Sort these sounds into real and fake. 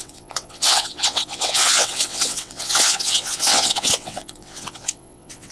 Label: fake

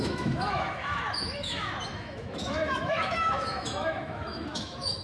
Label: fake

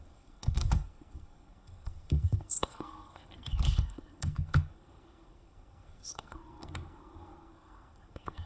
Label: fake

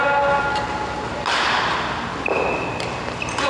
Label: real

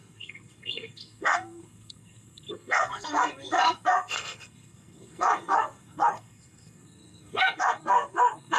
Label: fake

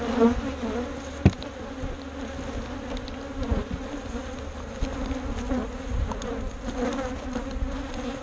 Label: real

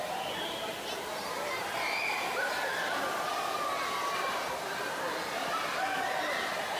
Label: real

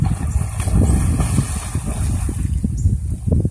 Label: real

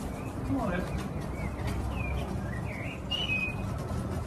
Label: real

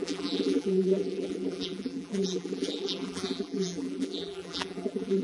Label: fake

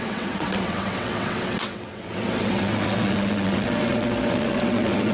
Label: fake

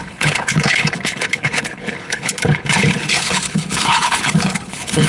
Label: fake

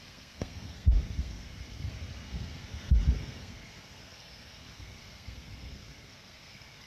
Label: fake